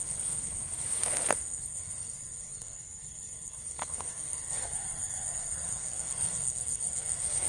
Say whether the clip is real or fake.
fake